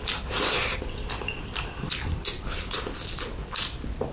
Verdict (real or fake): real